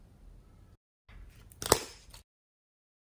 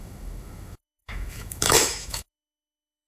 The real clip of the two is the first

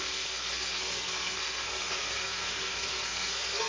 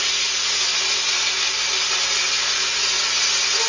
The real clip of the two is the second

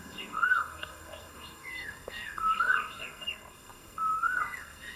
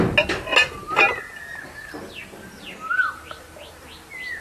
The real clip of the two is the second